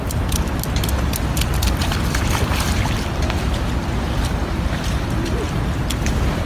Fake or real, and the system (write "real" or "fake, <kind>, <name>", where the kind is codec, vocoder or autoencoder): real